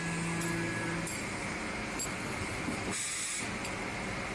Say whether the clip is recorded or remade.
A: recorded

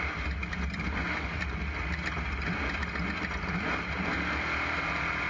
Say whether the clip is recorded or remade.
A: recorded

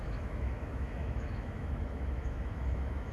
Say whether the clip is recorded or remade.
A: remade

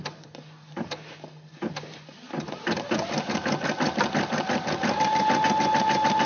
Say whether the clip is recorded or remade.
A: recorded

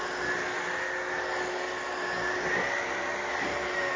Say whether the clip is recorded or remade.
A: recorded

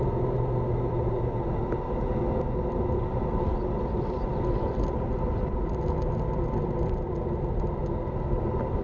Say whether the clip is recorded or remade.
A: recorded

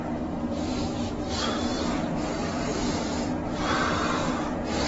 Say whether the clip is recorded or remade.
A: remade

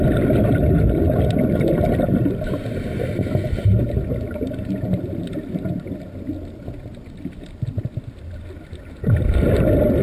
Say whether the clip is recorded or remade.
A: recorded